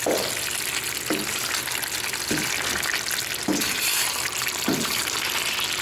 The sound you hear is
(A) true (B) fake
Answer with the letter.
A